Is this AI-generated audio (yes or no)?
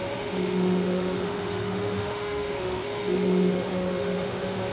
yes